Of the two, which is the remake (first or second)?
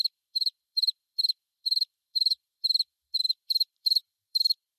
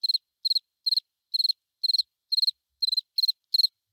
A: first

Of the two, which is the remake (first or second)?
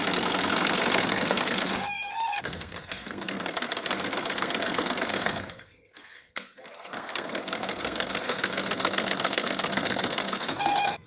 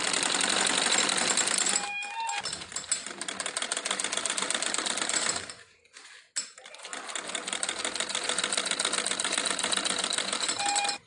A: first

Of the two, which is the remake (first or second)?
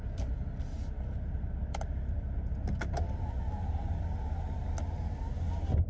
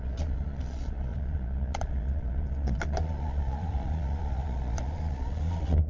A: second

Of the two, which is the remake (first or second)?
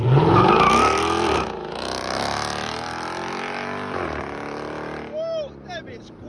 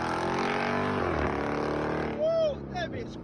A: first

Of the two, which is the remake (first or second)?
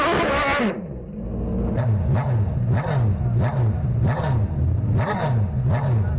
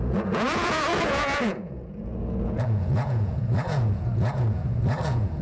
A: second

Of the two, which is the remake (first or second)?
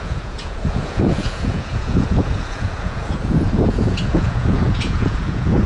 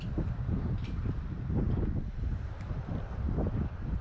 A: first